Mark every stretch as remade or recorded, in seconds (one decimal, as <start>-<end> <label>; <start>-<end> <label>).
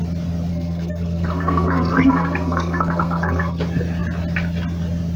0.0-0.5 recorded; 0.5-3.6 remade; 3.6-5.2 recorded